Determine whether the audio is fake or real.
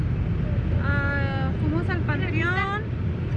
real